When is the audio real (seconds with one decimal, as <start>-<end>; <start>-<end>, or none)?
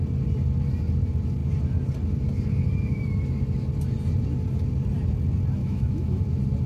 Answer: 0.0-5.6; 6.2-6.7